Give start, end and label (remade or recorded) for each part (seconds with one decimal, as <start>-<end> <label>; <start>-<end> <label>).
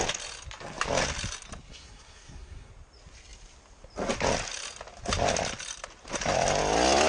0.0-1.7 recorded; 1.7-2.7 remade; 2.7-7.1 recorded